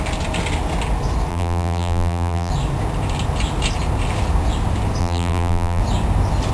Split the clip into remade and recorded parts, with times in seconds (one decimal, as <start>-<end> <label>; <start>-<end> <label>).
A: 0.0-1.3 recorded; 1.3-2.5 remade; 2.5-5.0 recorded; 5.0-5.8 remade; 5.8-6.5 recorded